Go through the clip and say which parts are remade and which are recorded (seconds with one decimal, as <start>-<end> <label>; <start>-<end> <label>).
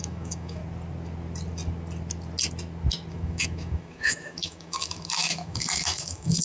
0.0-0.6 remade; 0.6-3.1 recorded; 3.1-6.4 remade